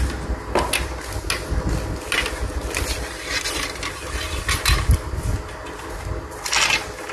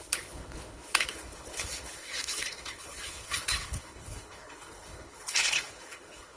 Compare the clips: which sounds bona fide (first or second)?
first